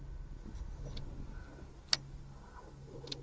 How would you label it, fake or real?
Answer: real